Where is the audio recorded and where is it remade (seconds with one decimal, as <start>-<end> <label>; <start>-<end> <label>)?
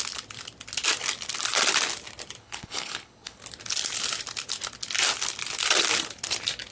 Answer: 0.0-2.4 recorded; 2.4-3.4 remade; 3.4-6.7 recorded